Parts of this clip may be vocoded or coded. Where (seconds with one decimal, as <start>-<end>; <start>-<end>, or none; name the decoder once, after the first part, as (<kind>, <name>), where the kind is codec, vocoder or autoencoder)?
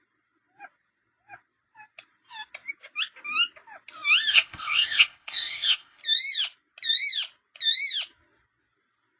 4.3-6.0 (codec, ZipCodec)